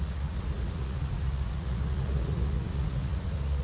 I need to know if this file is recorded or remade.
remade